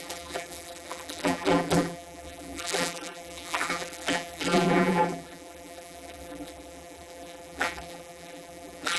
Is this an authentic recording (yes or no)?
no